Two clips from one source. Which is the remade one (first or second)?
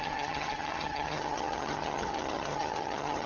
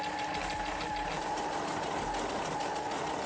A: first